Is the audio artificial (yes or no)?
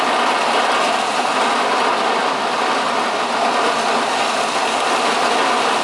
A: no